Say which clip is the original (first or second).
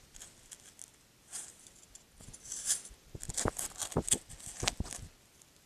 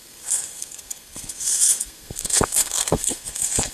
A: first